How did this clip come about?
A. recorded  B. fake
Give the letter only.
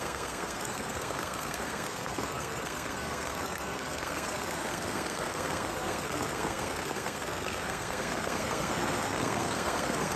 B